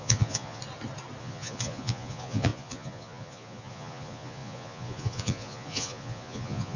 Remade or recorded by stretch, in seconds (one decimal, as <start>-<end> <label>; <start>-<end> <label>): 0.0-0.6 remade; 0.6-1.2 recorded; 1.2-6.8 remade